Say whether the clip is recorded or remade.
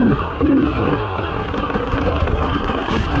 remade